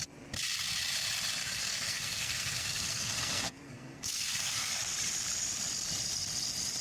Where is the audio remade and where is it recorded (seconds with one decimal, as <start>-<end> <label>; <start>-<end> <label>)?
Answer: 0.0-1.6 recorded; 1.6-4.7 remade; 4.7-6.8 recorded